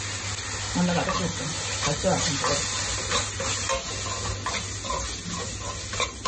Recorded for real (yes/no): yes